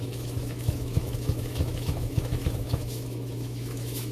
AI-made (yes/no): yes